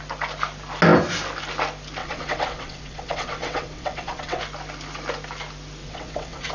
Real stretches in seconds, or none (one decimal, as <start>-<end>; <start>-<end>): 0.0-2.0; 4.4-5.8